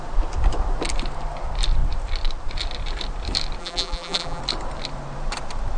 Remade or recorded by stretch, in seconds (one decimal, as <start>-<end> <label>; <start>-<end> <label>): 0.0-3.6 recorded; 3.6-4.4 remade; 4.4-5.8 recorded